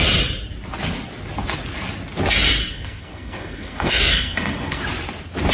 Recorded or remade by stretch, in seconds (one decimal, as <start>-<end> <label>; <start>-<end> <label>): 0.0-2.7 recorded; 2.7-4.8 remade; 4.8-5.5 recorded